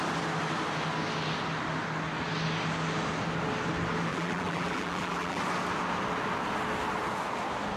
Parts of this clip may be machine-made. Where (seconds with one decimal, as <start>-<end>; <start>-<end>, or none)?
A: 4.1-5.4